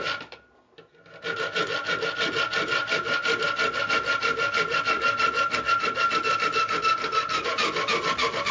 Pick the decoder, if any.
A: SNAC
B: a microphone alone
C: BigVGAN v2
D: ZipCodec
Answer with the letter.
B